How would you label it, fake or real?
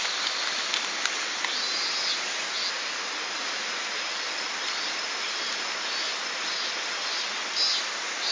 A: real